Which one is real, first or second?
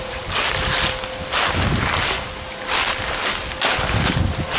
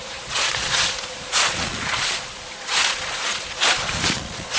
first